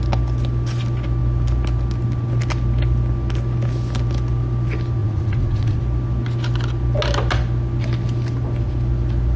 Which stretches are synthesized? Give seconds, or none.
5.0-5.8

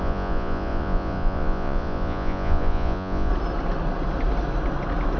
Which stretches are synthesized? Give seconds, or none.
0.0-3.3

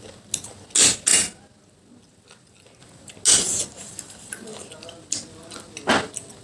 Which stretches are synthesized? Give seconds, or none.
none

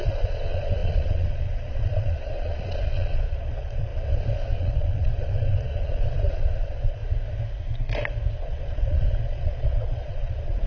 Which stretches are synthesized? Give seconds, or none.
0.0-3.9; 4.6-7.0; 8.3-10.7

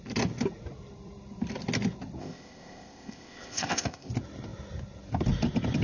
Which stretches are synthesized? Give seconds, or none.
2.2-4.1

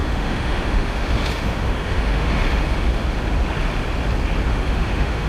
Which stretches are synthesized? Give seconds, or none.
0.0-3.2; 4.5-5.3

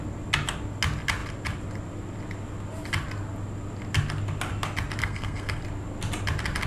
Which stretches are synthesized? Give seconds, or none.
5.0-5.6